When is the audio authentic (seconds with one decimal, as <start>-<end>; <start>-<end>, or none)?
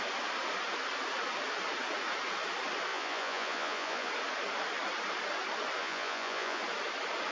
0.0-2.9; 4.1-5.8; 6.6-7.3